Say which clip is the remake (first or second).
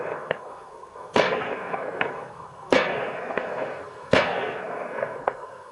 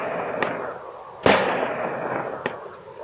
first